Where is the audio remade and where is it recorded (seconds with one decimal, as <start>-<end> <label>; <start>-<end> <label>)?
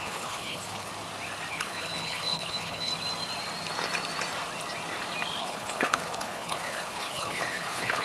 0.0-0.9 remade; 0.9-1.5 recorded; 1.5-2.9 remade; 2.9-5.4 recorded; 5.4-8.0 remade